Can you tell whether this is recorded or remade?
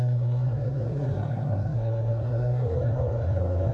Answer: remade